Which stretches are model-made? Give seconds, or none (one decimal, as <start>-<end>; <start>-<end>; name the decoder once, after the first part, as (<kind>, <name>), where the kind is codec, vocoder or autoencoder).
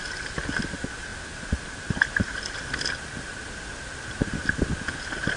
none